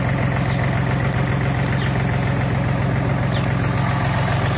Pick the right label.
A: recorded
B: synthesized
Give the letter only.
A